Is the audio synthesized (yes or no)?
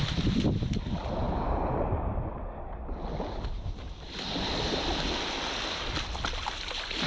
no